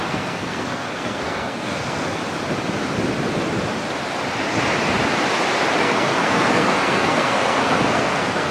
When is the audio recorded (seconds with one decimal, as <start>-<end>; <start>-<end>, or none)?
2.2-5.8